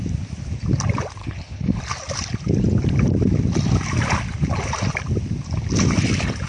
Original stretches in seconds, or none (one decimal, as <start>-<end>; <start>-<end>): 0.0-1.2; 1.8-6.5